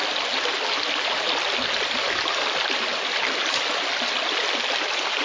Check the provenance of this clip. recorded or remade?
recorded